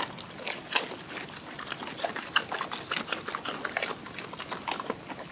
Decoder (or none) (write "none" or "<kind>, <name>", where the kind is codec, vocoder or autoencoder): none